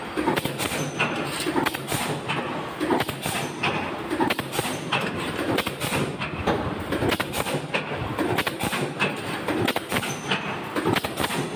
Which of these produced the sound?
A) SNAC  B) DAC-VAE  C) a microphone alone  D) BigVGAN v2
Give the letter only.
C